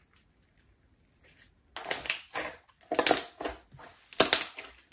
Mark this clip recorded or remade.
recorded